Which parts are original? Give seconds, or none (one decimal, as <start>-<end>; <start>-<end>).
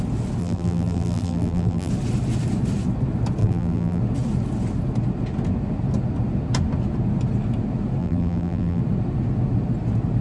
0.0-0.4; 1.9-3.4; 4.0-8.0; 8.8-10.2